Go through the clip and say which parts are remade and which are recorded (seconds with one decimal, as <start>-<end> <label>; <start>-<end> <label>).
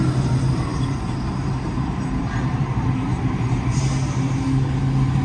0.0-0.7 recorded; 0.7-3.8 remade; 3.8-5.2 recorded